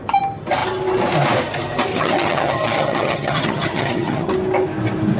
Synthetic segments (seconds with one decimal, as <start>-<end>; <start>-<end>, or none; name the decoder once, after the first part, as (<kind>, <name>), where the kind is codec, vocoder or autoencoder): 1.9-4.3 (vocoder, HiFi-GAN)